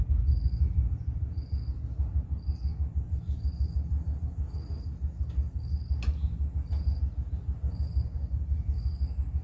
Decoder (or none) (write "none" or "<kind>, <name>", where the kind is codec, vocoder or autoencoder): none